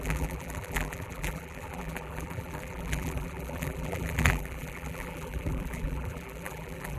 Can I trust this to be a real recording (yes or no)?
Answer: no